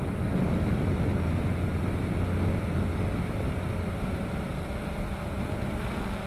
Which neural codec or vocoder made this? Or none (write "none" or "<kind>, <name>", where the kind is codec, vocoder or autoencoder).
none